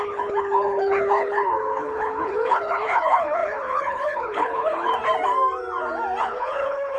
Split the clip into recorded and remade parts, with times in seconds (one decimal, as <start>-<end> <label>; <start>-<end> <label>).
0.0-4.9 remade; 4.9-6.2 recorded; 6.2-7.0 remade